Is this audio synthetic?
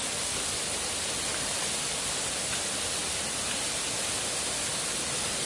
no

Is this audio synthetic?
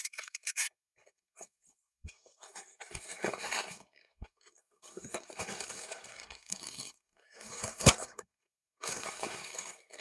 yes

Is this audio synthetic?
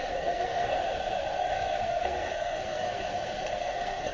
yes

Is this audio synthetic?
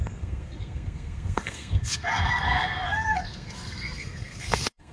yes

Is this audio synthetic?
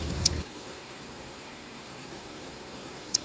yes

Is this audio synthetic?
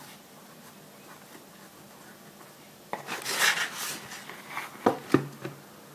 no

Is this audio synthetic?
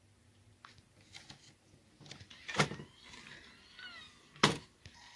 no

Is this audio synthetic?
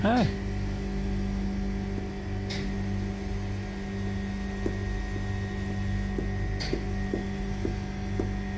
no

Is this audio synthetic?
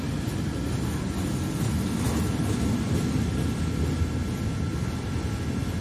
no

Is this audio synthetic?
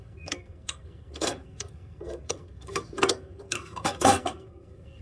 yes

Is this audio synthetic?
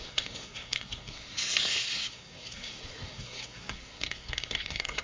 yes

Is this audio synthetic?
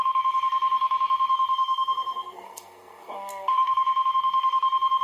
yes